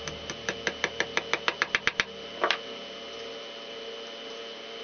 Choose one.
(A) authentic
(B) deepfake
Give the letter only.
A